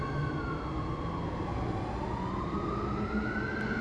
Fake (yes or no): no